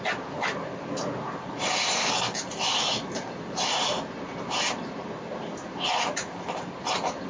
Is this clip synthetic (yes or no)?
no